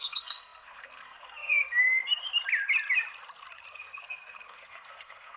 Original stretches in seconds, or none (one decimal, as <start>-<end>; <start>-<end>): 2.2-3.7